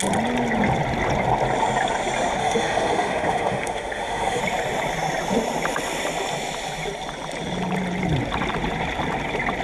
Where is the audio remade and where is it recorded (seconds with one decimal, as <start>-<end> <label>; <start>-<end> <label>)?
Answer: 0.0-2.4 recorded; 2.4-4.4 remade; 4.4-9.6 recorded